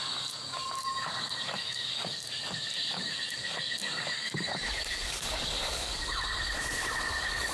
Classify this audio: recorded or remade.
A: remade